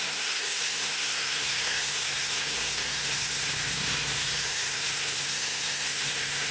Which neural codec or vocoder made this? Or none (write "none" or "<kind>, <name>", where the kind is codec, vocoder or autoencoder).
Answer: codec, SNAC